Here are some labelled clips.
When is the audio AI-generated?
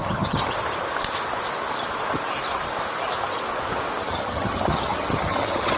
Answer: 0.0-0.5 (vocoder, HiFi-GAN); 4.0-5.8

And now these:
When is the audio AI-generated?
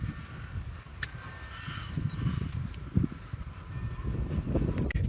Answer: none